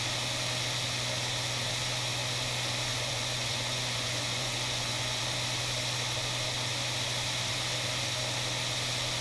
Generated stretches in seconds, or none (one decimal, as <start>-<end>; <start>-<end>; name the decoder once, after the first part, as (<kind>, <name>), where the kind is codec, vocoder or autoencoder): 2.9-5.2 (vocoder, Vocos)